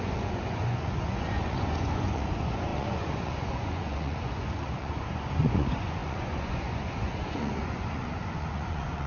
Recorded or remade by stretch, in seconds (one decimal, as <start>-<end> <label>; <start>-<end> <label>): 0.0-9.1 remade